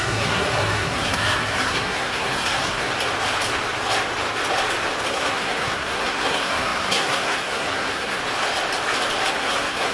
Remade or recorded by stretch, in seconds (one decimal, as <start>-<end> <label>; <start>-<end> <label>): 0.0-2.9 remade; 2.9-5.1 recorded; 5.1-8.2 remade; 8.2-9.3 recorded; 9.3-9.9 remade